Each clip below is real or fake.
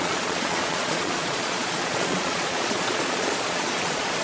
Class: fake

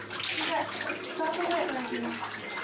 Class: real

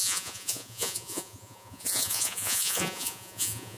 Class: fake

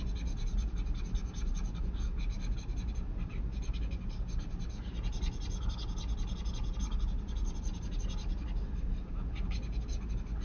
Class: real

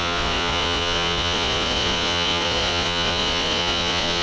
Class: fake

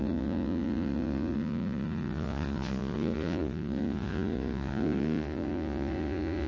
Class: fake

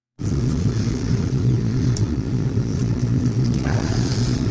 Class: fake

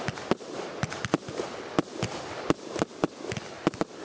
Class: real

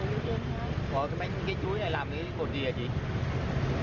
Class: real